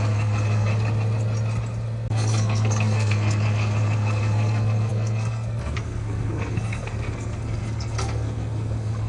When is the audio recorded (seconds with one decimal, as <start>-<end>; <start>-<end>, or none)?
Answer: 0.7-2.1